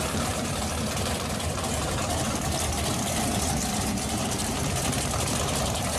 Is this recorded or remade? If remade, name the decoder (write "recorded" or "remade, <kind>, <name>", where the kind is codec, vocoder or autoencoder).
remade, vocoder, BigVGAN v2